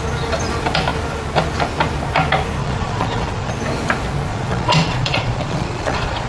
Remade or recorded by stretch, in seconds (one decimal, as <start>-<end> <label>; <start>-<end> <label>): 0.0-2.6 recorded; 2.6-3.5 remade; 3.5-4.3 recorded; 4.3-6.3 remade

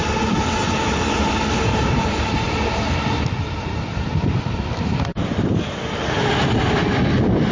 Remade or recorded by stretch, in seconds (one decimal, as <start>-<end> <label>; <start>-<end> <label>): 0.0-1.7 recorded; 1.7-6.2 remade; 6.2-7.5 recorded

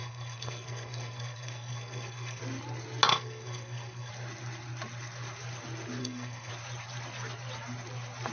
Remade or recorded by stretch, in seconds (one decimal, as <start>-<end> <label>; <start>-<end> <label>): 0.0-2.4 remade; 2.4-3.1 recorded; 3.1-4.1 remade; 4.1-6.0 recorded; 6.0-6.5 remade; 6.5-8.3 recorded